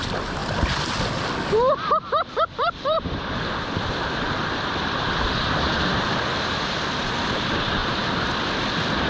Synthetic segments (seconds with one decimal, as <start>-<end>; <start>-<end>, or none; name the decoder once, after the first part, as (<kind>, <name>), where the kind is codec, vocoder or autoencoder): 0.0-0.4 (vocoder, BigVGAN v2); 1.9-7.8